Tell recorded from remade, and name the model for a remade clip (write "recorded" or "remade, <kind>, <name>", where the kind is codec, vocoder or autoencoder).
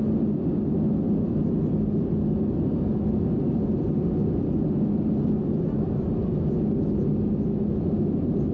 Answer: recorded